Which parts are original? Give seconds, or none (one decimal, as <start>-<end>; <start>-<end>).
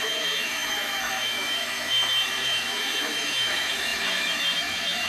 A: none